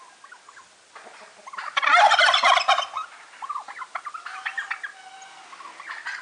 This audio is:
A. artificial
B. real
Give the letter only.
B